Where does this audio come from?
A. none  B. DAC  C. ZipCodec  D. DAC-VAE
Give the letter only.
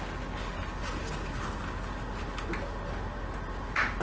A